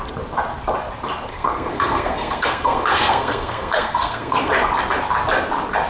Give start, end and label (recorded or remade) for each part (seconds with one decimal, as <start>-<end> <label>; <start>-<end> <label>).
0.0-1.3 recorded; 1.3-4.5 remade; 4.5-5.9 recorded

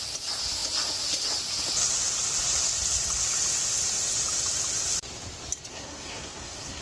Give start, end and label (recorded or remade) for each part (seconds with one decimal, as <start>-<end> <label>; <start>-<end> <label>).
0.0-5.7 recorded; 5.7-6.8 remade